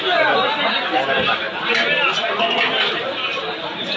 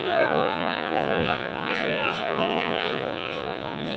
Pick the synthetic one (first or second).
second